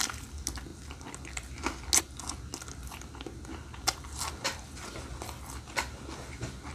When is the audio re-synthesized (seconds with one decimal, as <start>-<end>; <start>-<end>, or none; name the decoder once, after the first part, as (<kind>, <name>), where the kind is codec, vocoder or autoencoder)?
none

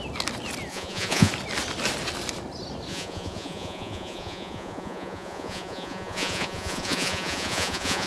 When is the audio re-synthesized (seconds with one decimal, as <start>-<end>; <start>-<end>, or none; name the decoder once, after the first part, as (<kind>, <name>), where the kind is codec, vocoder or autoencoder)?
0.7-1.3 (vocoder, Vocos); 2.9-8.1